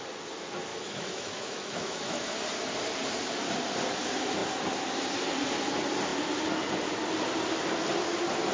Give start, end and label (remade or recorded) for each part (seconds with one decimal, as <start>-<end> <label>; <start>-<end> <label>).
0.0-0.7 recorded; 0.7-2.4 remade; 2.4-8.5 recorded